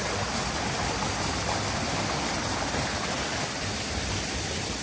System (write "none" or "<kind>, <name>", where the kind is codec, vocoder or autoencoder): none